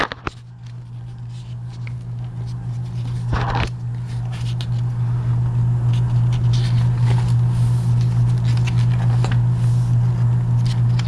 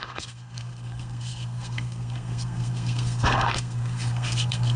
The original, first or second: first